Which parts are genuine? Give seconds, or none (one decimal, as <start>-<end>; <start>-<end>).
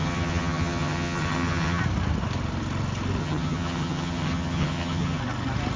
1.8-3.2; 5.2-5.8